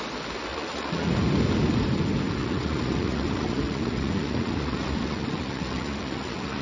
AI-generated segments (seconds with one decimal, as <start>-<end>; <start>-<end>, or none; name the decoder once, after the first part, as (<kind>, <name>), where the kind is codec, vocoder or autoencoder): 0.5-1.1 (vocoder, Vocos); 2.4-6.6